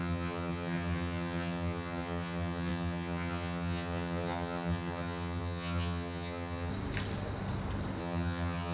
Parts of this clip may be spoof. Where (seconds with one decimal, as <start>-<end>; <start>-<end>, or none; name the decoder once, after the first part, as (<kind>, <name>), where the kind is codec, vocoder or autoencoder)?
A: 0.0-6.7 (vocoder, HiFi-GAN); 8.0-8.7